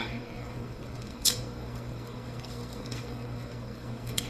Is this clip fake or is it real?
fake